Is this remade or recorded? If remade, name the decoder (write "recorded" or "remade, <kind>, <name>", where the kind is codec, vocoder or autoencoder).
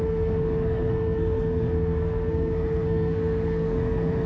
remade, codec, SNAC